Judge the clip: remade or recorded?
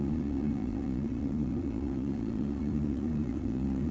remade